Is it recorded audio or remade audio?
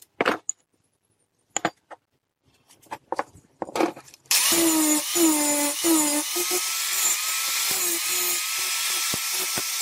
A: recorded